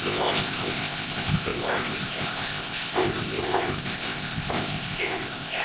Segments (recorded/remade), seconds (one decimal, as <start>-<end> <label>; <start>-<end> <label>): 0.0-5.6 remade